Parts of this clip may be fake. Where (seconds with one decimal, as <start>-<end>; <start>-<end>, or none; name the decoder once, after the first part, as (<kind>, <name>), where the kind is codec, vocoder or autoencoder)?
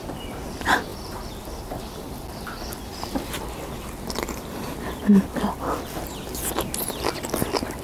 none